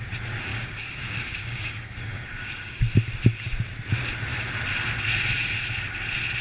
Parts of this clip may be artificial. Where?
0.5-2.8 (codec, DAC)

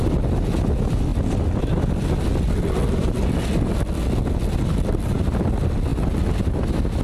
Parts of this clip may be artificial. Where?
none

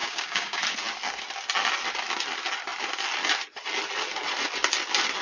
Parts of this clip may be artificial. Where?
0.0-0.6 (codec, DAC)

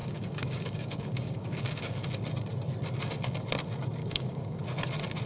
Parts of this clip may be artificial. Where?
0.0-2.0 (codec, DAC); 4.0-4.6